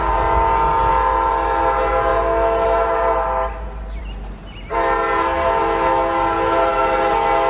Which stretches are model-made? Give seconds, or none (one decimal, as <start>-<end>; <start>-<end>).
none